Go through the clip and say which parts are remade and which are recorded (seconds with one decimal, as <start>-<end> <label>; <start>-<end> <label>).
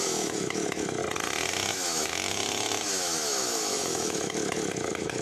0.0-1.0 remade; 1.0-1.7 recorded; 1.7-5.2 remade